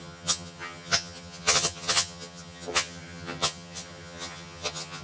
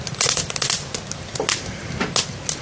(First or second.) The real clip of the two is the second